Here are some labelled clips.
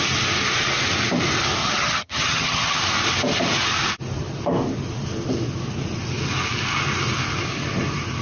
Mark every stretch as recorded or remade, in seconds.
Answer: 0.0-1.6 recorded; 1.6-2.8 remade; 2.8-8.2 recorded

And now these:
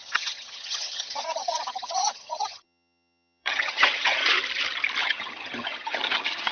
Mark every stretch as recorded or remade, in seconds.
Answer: 0.0-4.2 remade; 4.2-5.0 recorded; 5.0-6.5 remade

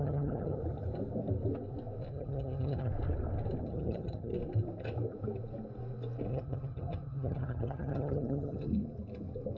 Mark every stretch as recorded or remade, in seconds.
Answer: 0.0-0.6 remade; 0.6-2.1 recorded; 2.1-2.9 remade; 2.9-3.6 recorded; 3.6-4.3 remade; 4.3-6.3 recorded; 6.3-8.7 remade; 8.7-9.6 recorded

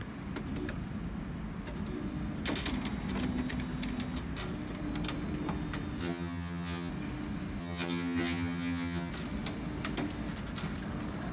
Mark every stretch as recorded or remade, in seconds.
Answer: 0.0-6.0 recorded; 6.0-6.9 remade; 6.9-7.6 recorded; 7.6-9.1 remade; 9.1-11.3 recorded